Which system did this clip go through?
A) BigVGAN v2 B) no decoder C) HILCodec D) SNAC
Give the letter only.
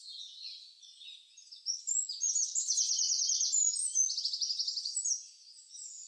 B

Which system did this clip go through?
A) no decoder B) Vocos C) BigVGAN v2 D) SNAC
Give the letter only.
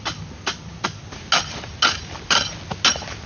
A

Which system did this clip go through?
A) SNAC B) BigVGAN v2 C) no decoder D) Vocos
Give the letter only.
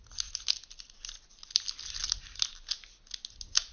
C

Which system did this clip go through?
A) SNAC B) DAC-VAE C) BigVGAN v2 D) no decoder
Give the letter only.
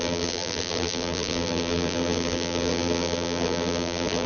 C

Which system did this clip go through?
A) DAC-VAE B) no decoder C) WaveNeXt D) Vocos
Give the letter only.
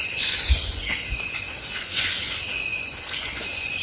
D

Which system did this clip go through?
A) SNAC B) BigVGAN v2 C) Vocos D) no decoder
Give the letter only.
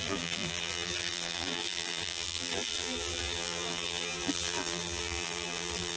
B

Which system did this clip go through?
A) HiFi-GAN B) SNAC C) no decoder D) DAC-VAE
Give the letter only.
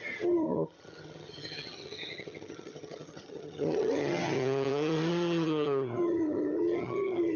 A